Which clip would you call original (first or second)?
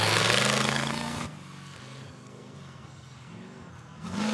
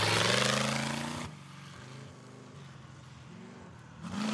second